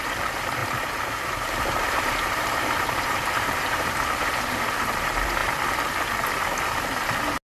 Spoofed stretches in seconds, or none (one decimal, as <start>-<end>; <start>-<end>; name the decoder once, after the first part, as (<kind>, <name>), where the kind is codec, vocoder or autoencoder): 0.6-4.6 (vocoder, BigVGAN v2)